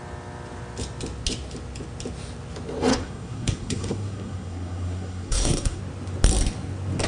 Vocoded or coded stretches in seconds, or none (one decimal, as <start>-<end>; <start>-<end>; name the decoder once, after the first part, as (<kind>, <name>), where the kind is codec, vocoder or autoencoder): 2.9-5.8 (codec, SNAC)